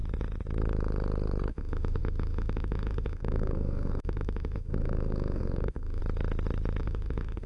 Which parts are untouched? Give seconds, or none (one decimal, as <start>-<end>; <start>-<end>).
0.0-1.5; 6.0-6.8